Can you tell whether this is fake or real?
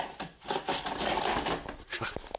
real